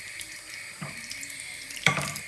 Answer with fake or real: fake